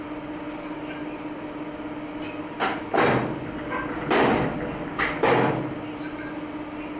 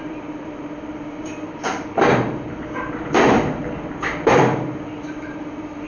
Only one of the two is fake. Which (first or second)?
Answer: second